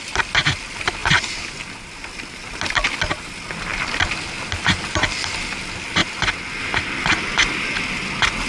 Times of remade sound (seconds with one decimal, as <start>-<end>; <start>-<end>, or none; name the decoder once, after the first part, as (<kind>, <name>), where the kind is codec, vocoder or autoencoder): none